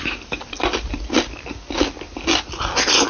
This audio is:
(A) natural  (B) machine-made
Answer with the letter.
A